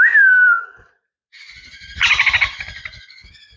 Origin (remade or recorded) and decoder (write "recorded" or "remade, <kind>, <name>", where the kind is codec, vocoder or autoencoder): recorded